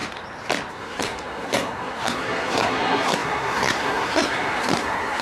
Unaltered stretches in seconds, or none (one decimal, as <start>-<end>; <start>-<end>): 0.0-0.7